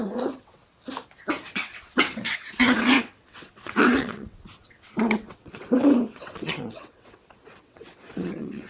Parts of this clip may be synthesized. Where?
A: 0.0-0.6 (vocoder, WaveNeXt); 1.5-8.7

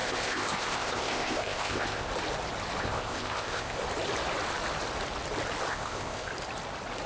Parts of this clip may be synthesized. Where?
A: 0.0-2.1 (codec, ZipCodec); 2.8-3.8; 5.7-6.3

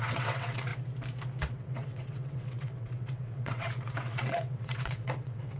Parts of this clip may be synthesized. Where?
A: 0.0-0.7 (vocoder, WaveNeXt); 1.4-5.6

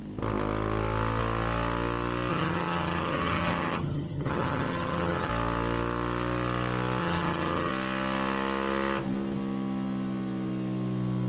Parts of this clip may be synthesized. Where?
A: 2.3-5.3 (vocoder, HiFi-GAN); 7.0-7.7

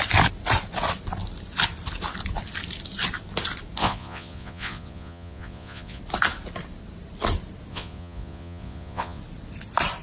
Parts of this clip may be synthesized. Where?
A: 3.8-6.0 (vocoder, Vocos); 7.7-9.2

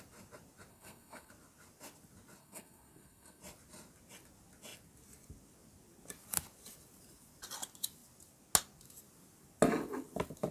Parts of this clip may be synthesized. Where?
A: 0.7-1.3 (codec, SNAC); 2.4-3.4

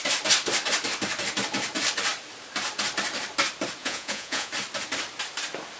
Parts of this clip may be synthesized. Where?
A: 3.8-4.5 (vocoder, Vocos)